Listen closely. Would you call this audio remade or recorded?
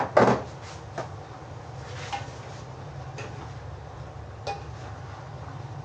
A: recorded